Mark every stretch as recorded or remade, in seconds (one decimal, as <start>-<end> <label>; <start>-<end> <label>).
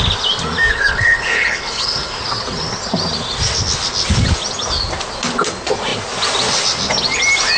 0.0-0.7 recorded; 0.7-2.2 remade; 2.2-7.6 recorded